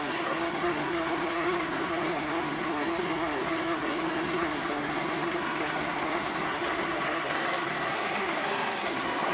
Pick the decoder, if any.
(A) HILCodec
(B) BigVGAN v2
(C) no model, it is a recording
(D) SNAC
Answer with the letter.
D